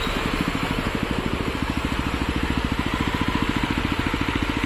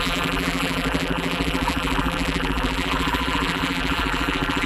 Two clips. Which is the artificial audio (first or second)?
second